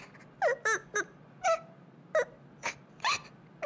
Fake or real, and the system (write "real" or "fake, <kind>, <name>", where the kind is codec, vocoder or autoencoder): real